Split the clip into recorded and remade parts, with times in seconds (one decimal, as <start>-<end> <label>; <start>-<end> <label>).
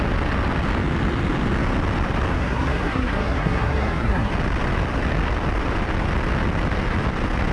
0.0-2.3 recorded; 2.3-4.3 remade; 4.3-7.5 recorded